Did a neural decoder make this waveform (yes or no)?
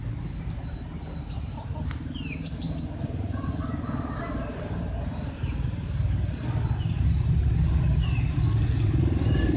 no